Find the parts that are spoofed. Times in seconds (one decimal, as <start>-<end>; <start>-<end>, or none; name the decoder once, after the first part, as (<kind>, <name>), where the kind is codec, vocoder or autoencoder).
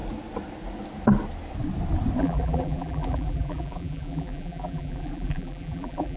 2.2-6.2 (vocoder, BigVGAN v2)